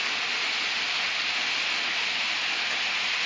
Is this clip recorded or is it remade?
recorded